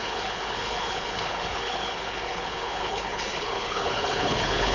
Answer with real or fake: fake